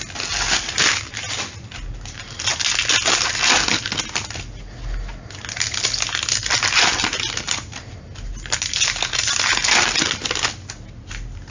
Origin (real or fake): real